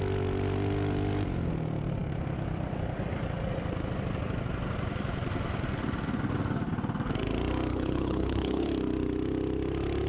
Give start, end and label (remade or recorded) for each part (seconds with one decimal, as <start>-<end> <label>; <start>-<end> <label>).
0.0-7.7 recorded; 7.7-8.7 remade; 8.7-10.1 recorded